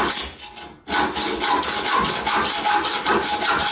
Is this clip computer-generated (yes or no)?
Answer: no